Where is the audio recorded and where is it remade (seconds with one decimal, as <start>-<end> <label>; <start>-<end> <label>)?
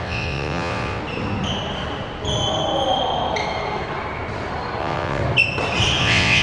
0.0-1.0 remade; 1.0-4.8 recorded; 4.8-5.2 remade; 5.2-6.0 recorded; 6.0-6.4 remade